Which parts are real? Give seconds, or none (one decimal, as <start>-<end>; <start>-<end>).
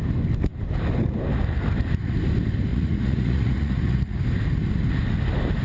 0.0-2.7; 4.2-5.6